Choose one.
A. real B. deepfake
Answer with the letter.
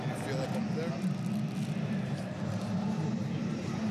A